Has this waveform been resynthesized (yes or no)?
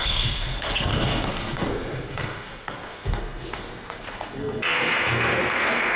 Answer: yes